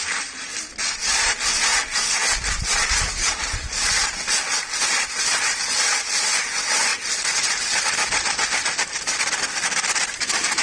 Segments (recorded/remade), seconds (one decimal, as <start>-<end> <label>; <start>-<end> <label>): 0.0-10.6 recorded